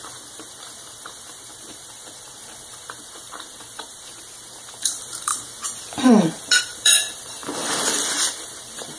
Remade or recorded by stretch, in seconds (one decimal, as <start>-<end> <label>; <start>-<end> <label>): 0.0-9.0 remade